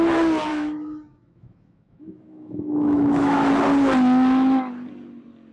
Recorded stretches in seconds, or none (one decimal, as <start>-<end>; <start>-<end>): 0.0-0.5; 3.5-5.5

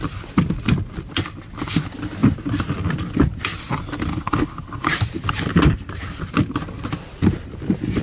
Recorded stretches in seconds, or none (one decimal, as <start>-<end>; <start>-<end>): 0.0-4.1; 4.9-8.0

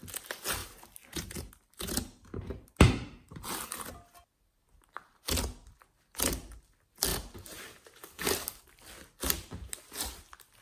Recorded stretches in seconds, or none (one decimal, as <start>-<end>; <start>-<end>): 0.0-0.6; 1.5-7.1; 8.6-10.6